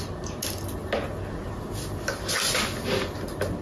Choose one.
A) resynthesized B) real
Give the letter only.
B